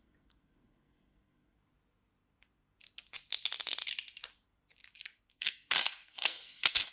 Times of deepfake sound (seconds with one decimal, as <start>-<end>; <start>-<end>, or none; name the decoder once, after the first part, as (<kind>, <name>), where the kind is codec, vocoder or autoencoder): 0.0-1.6 (codec, SNAC); 5.3-6.9